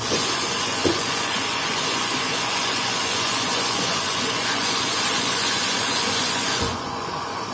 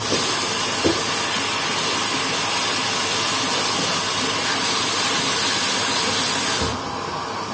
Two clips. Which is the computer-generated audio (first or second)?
first